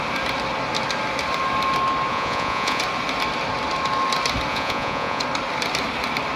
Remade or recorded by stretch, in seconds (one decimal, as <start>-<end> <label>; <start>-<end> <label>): 0.0-2.1 recorded; 2.1-2.8 remade; 2.8-4.5 recorded; 4.5-5.2 remade; 5.2-6.4 recorded